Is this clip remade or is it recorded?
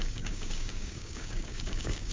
remade